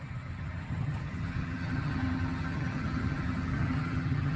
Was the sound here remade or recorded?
remade